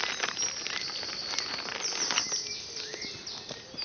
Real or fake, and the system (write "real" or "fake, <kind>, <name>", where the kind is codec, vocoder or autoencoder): real